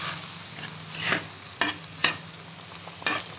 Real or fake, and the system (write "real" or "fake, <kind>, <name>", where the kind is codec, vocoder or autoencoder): real